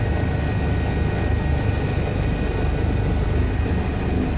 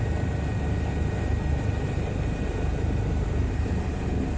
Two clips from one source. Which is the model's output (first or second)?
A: second